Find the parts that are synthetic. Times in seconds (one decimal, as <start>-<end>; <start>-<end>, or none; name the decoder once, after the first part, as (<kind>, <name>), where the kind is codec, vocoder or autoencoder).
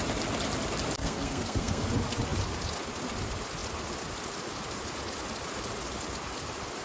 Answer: 1.0-1.9 (codec, SNAC)